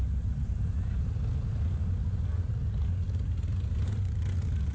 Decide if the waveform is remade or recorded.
recorded